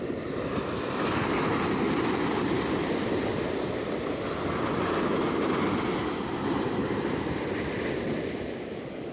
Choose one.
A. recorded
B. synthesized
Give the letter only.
A